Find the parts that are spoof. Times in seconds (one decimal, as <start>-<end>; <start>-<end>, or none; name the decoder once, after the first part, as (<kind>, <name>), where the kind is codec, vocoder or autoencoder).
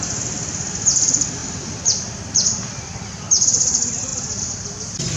none